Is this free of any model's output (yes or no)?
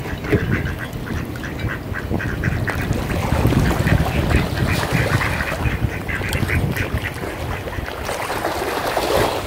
yes